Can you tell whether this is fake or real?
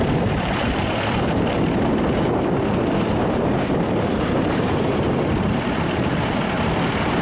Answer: fake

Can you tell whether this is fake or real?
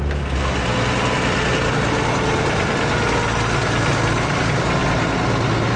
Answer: real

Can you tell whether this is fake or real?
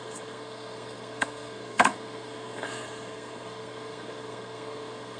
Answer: fake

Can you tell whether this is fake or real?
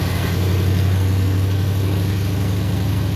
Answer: fake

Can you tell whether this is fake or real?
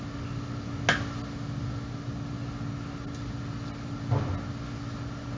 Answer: real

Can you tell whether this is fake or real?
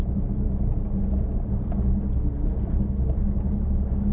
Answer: real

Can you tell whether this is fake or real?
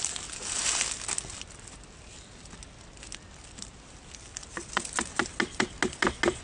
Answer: real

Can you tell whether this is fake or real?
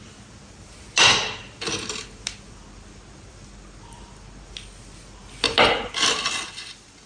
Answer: real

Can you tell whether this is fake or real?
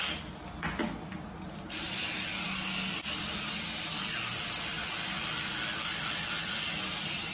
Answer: real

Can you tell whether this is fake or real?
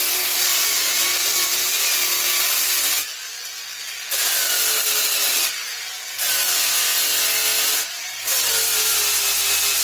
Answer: real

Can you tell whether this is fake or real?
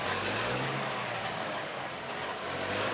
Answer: fake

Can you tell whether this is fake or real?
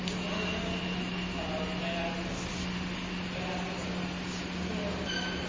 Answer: real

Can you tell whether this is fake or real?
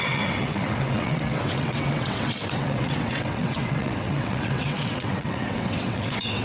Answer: fake